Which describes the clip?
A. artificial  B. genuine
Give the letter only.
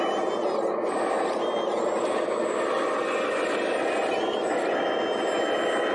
B